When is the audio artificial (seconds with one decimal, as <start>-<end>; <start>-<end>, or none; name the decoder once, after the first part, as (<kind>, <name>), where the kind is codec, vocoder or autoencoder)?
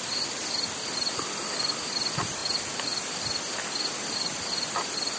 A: none